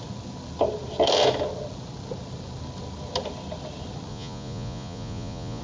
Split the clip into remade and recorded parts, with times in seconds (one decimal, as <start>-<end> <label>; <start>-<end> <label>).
0.0-4.1 recorded; 4.1-5.6 remade